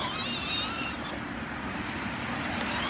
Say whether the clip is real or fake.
real